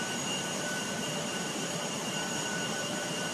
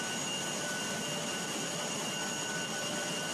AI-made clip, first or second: first